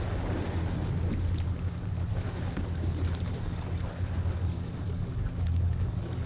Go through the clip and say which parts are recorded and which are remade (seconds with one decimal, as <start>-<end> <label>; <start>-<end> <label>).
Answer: 0.0-2.1 recorded; 2.1-6.3 remade